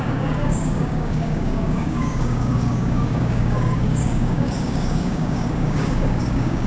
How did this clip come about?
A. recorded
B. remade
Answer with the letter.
B